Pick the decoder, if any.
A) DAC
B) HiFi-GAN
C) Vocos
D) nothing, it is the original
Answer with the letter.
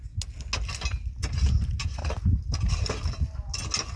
D